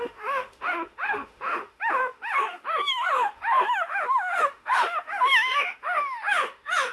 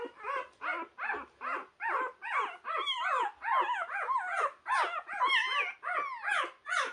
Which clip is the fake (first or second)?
first